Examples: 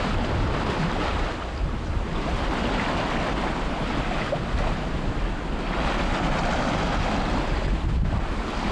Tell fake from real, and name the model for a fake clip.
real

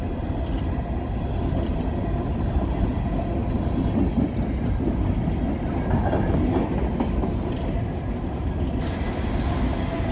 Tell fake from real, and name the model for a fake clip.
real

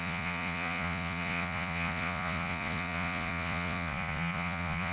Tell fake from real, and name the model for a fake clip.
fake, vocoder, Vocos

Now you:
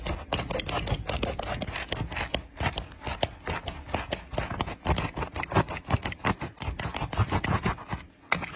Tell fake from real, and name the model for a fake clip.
real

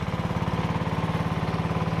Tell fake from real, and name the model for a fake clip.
real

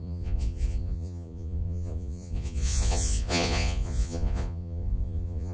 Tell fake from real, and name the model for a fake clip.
fake, vocoder, Vocos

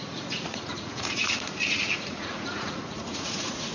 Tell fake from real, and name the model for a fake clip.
fake, vocoder, Vocos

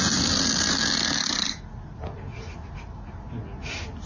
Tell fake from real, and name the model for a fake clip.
real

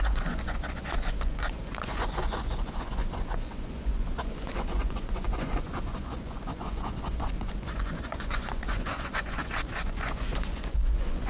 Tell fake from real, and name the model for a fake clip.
fake, vocoder, Vocos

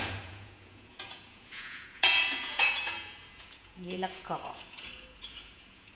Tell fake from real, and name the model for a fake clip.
fake, vocoder, Vocos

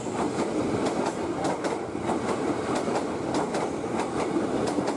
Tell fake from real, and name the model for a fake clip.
real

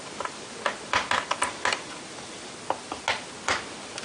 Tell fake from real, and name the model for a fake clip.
real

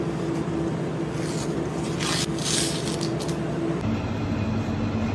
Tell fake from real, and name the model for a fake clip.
real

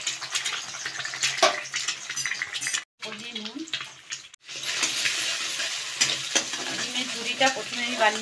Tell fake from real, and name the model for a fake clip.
real